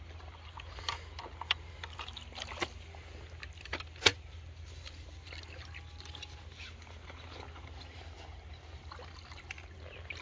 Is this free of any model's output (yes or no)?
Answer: yes